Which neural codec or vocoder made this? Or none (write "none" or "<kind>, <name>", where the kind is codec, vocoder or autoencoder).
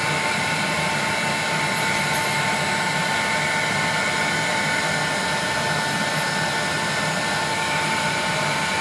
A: none